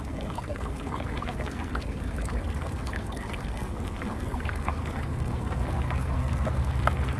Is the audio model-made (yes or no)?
yes